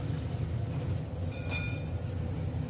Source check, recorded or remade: recorded